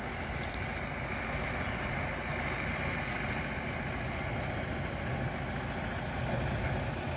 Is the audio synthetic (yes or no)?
no